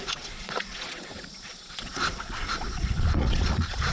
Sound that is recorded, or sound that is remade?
remade